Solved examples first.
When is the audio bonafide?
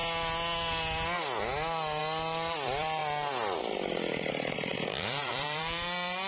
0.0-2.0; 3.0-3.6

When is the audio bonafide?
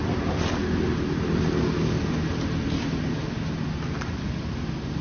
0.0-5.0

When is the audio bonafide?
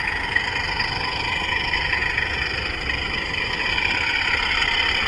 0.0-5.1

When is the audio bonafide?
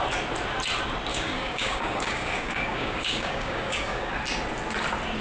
0.0-1.1; 4.1-5.2